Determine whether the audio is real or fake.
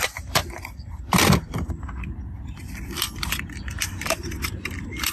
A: fake